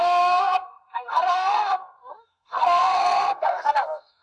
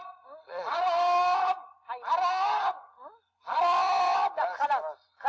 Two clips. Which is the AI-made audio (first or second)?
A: first